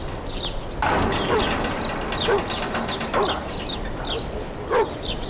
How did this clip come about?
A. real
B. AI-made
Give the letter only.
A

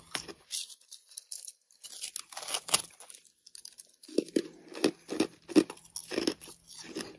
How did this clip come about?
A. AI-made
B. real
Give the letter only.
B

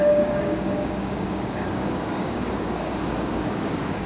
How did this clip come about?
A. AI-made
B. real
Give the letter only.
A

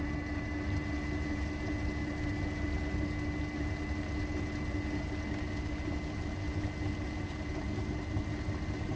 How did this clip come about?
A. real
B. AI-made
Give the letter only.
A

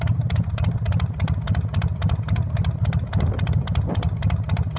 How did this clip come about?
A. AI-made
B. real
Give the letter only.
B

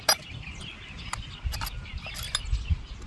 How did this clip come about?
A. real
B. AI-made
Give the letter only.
A